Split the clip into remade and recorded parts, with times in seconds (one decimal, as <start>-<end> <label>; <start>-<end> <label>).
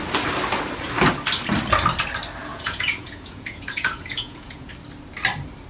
0.0-2.5 recorded; 2.5-4.7 remade; 4.7-5.7 recorded